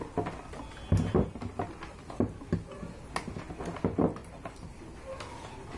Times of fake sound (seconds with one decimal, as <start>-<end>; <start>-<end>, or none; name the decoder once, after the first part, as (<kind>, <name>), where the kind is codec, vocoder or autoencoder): 4.2-4.9 (vocoder, BigVGAN v2)